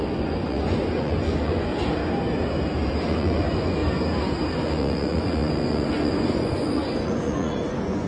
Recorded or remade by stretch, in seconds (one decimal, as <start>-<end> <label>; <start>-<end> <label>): 0.0-1.7 remade; 1.7-3.1 recorded; 3.1-3.8 remade; 3.8-4.5 recorded; 4.5-8.1 remade